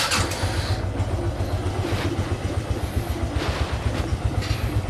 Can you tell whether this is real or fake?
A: real